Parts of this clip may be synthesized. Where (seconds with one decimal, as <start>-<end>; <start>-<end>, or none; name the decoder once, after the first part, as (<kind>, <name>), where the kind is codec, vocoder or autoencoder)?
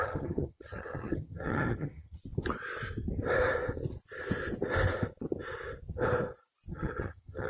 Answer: 0.0-2.2 (vocoder, HiFi-GAN); 6.7-7.5